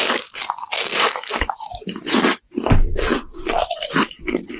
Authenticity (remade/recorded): remade